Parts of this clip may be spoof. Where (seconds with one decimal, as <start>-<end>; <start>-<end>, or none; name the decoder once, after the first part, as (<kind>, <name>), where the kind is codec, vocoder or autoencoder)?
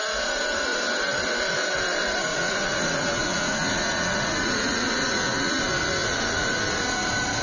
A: 2.3-5.5 (vocoder, Vocos); 6.0-6.6